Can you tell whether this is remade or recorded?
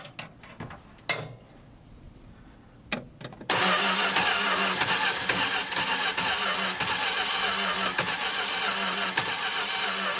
recorded